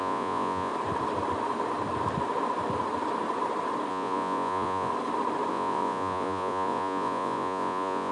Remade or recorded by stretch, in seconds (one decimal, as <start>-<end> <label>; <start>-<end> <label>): 0.0-0.7 remade; 0.7-3.9 recorded; 3.9-4.9 remade; 4.9-5.5 recorded; 5.5-8.1 remade